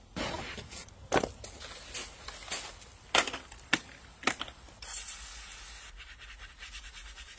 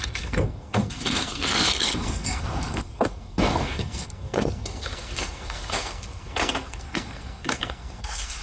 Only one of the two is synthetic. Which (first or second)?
second